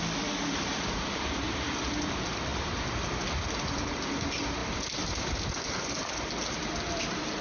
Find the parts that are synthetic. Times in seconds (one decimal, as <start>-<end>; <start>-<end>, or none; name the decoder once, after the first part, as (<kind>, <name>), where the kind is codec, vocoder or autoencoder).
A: none